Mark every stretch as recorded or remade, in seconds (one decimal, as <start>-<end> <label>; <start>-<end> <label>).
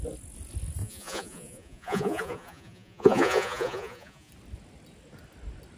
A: 0.0-0.8 recorded; 0.8-4.3 remade; 4.3-5.8 recorded